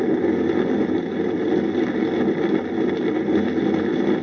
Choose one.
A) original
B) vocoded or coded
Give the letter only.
A